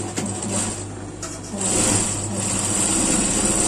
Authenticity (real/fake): real